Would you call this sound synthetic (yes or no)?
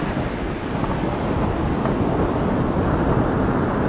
no